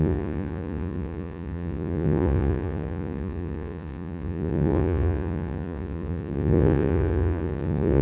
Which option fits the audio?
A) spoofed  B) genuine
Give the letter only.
A